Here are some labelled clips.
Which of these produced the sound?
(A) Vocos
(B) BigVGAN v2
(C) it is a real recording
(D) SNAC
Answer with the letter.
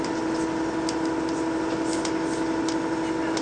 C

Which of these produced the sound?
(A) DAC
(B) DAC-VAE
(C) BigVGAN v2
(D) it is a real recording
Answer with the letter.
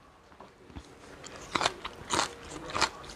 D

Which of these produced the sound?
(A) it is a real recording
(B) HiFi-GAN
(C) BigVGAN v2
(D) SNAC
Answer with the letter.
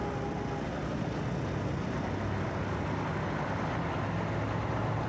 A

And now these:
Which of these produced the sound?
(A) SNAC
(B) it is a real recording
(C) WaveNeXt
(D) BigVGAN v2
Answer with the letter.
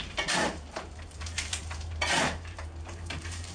D